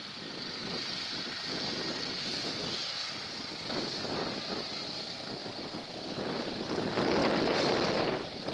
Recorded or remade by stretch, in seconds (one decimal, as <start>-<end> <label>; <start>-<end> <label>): 0.0-5.4 recorded; 5.4-6.0 remade; 6.0-7.2 recorded; 7.2-8.5 remade